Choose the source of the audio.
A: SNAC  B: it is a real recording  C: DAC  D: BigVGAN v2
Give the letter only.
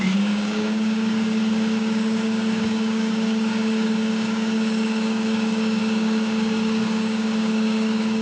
C